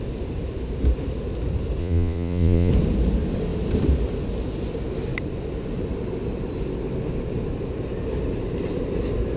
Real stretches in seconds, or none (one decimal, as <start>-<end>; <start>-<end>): 0.0-1.8; 2.7-9.4